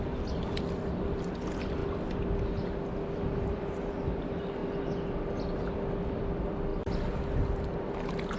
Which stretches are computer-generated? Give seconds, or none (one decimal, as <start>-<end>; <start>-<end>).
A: none